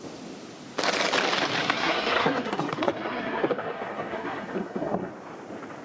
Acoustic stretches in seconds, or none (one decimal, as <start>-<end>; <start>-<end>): 0.0-1.6; 5.1-5.8